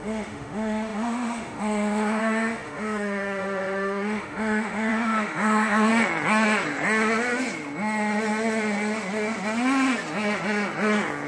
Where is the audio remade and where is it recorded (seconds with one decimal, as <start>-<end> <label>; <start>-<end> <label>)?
0.0-5.9 remade; 5.9-11.3 recorded